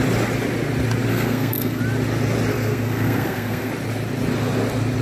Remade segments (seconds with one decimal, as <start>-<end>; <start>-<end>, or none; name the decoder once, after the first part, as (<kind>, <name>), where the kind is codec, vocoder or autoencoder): 1.1-1.8 (codec, SNAC); 2.5-3.7